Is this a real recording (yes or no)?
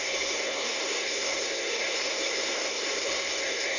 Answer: no